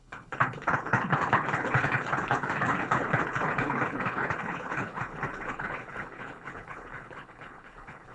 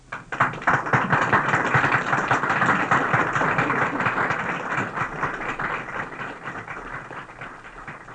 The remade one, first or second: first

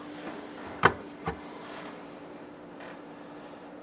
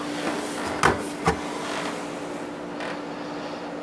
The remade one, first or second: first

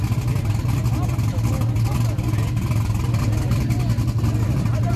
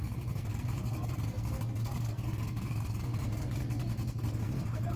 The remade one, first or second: second